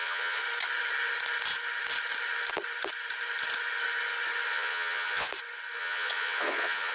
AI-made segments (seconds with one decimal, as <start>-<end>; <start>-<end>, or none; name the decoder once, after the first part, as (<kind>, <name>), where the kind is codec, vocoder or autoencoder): 0.0-0.4 (vocoder, Vocos); 4.5-5.3; 5.8-6.9